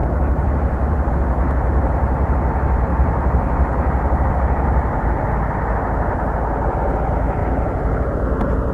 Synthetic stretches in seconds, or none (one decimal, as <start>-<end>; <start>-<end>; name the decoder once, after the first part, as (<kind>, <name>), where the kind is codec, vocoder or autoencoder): 0.0-1.1 (vocoder, BigVGAN v2); 2.9-4.3; 7.4-8.2